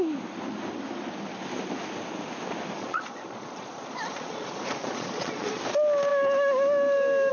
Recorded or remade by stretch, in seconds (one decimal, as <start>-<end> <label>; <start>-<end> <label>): 0.0-2.8 recorded; 2.8-5.6 remade; 5.6-7.3 recorded